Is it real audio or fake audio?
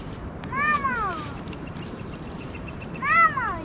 fake